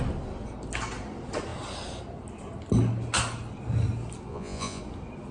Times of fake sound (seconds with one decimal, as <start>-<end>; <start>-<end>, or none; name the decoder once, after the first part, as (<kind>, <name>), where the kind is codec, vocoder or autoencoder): 4.3-4.8 (vocoder, Vocos)